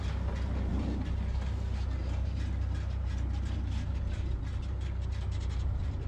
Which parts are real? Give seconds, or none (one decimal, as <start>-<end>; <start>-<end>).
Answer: 0.0-6.1